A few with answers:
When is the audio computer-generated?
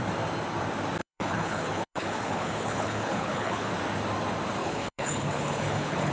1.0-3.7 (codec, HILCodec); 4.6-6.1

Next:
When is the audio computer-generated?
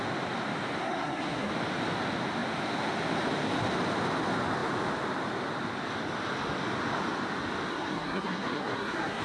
0.8-1.5 (codec, SNAC); 7.7-9.2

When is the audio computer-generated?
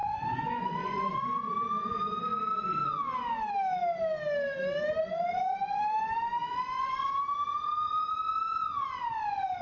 0.0-1.5 (vocoder, Vocos); 5.0-5.8; 6.4-7.1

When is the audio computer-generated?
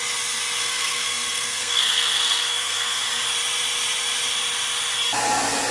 0.6-3.0 (codec, SNAC)